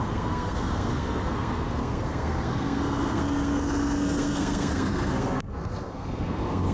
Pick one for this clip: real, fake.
fake